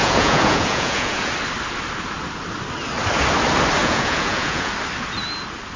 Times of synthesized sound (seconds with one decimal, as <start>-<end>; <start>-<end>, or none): 0.0-1.3; 3.8-4.7